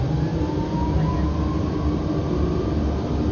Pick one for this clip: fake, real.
real